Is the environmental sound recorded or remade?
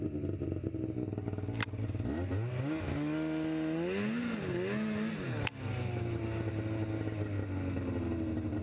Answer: recorded